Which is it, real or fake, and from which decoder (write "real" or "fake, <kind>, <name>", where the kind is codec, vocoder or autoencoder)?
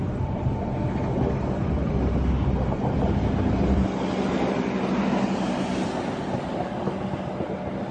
real